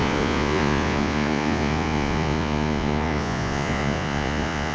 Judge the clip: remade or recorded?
remade